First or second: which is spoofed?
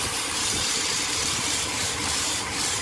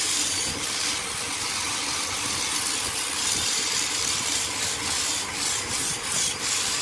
first